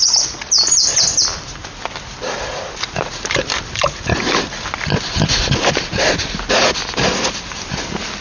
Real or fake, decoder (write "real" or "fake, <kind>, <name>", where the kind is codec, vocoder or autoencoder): real